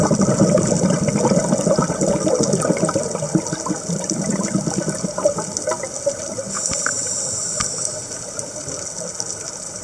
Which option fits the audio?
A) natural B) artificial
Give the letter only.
A